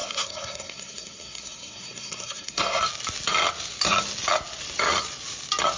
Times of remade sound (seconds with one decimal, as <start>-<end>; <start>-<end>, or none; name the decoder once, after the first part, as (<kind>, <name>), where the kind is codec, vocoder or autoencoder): 0.0-2.8 (codec, SNAC)